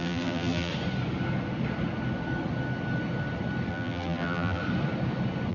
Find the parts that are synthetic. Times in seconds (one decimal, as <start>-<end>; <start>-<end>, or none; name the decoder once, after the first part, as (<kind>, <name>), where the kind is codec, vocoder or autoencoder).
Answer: 0.0-0.7 (vocoder, BigVGAN v2); 3.7-4.6